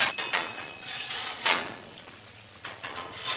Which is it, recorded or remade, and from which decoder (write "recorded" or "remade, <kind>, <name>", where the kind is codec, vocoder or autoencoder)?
remade, vocoder, Vocos